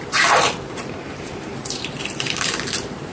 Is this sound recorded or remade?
remade